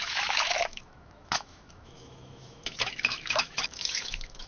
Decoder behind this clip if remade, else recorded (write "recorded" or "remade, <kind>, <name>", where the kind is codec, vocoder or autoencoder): remade, autoencoder, DAC-VAE